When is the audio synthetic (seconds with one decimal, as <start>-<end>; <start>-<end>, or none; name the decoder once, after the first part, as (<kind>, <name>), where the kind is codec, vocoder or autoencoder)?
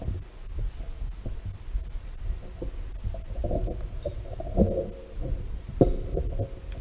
none